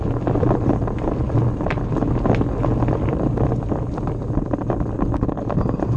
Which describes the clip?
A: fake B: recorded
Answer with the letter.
B